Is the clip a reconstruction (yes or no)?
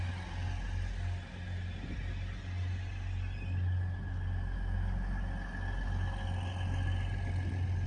no